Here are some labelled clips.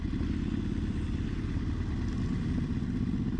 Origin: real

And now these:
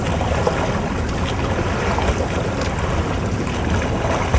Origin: real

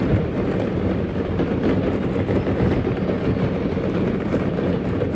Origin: real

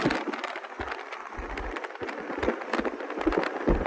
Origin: fake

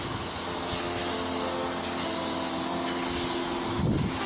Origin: real